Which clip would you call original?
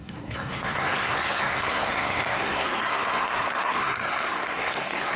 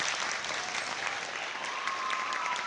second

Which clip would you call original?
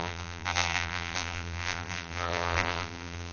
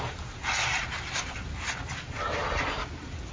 second